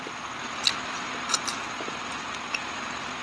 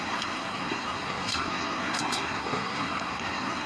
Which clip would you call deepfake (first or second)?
second